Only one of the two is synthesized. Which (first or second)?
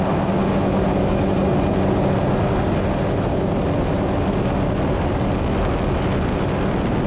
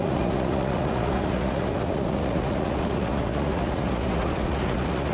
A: second